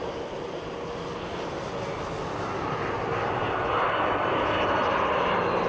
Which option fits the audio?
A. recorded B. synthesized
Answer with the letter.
A